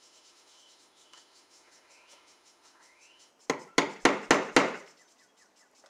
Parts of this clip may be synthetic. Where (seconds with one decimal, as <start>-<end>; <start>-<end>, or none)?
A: 0.0-3.3